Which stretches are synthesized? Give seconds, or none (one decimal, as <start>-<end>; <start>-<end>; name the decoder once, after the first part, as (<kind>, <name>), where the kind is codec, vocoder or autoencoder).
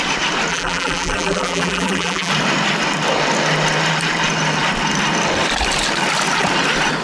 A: 0.5-2.3 (vocoder, BigVGAN v2)